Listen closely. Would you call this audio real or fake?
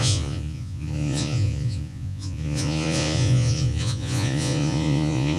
fake